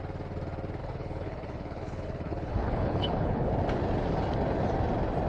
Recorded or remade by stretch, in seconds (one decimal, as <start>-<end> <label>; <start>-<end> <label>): 0.0-0.8 recorded; 0.8-3.5 remade; 3.5-5.3 recorded